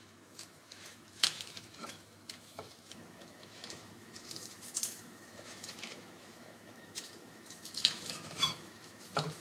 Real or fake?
fake